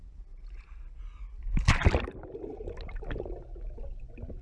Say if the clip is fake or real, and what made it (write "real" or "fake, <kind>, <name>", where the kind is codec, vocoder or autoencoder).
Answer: real